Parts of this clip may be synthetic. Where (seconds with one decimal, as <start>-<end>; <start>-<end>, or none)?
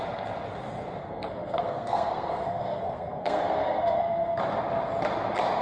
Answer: 1.0-4.4